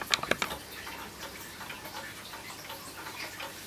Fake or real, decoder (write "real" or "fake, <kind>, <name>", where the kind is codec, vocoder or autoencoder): real